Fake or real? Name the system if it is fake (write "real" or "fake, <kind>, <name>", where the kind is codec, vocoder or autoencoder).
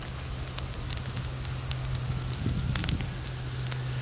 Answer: real